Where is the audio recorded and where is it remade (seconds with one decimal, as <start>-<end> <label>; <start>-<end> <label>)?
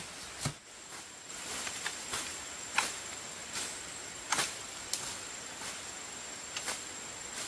0.0-7.5 recorded